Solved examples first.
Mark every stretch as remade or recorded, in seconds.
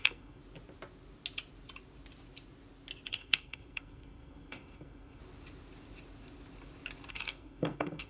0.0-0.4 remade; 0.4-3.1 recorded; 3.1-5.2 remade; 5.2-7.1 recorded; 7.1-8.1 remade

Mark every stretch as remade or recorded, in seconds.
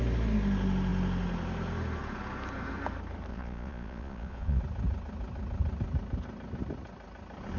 0.0-3.3 recorded; 3.3-4.6 remade; 4.6-7.6 recorded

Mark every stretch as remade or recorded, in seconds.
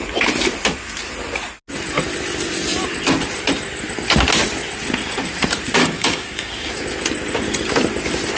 0.0-5.8 recorded; 5.8-6.7 remade; 6.7-8.4 recorded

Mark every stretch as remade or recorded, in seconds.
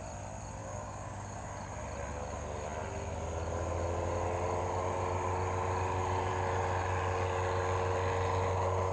0.0-0.6 recorded; 0.6-1.5 remade; 1.5-8.9 recorded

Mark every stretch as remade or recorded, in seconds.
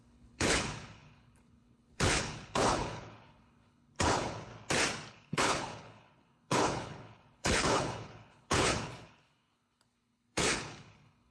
0.0-4.5 remade; 4.5-5.1 recorded; 5.1-11.3 remade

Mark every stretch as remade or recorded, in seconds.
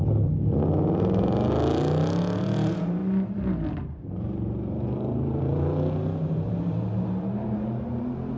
0.0-3.0 recorded; 3.0-5.6 remade; 5.6-6.0 recorded; 6.0-7.8 remade; 7.8-8.4 recorded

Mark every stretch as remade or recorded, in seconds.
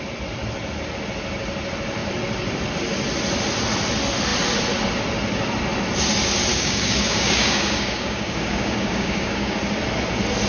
0.0-6.5 recorded; 6.5-9.6 remade; 9.6-10.5 recorded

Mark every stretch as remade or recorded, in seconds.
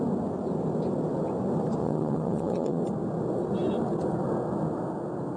0.0-1.8 recorded; 1.8-2.8 remade; 2.8-5.4 recorded